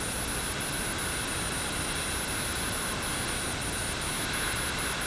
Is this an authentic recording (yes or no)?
yes